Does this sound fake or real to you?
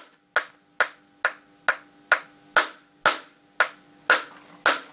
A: real